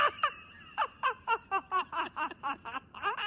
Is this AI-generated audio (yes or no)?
yes